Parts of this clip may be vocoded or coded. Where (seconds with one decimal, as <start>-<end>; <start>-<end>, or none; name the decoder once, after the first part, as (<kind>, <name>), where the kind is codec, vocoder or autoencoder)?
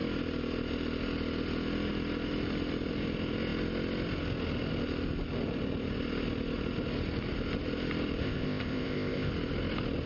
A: 8.2-9.3 (codec, ZipCodec)